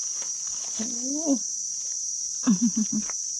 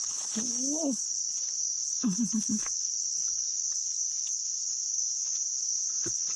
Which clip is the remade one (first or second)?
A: second